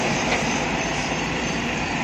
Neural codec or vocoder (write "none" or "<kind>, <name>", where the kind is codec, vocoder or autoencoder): vocoder, BigVGAN v2